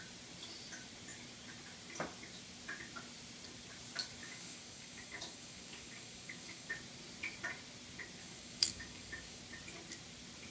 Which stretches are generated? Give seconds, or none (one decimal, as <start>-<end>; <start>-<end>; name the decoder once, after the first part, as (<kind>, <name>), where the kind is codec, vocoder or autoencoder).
4.2-6.7 (codec, DAC); 8.2-9.4